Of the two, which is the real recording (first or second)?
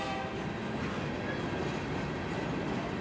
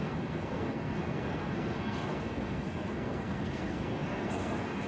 first